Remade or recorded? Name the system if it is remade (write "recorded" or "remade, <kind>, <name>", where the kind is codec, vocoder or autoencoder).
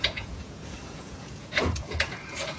remade, vocoder, Vocos